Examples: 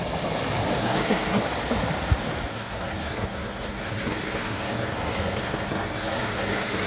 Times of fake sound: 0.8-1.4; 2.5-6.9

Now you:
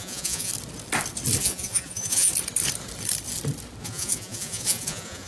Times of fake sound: 0.0-0.5; 1.4-2.3; 3.8-5.3